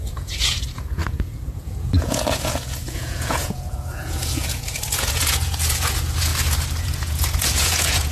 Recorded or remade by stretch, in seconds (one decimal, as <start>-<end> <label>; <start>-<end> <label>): 0.0-6.3 remade; 6.3-6.8 recorded; 6.8-8.1 remade